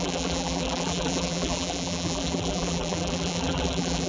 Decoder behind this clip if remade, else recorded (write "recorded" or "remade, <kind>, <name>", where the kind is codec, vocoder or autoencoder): remade, vocoder, BigVGAN v2